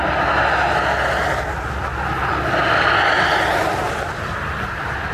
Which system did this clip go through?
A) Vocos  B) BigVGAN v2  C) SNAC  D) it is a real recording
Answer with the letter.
D